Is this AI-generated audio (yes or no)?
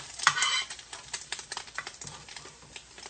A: yes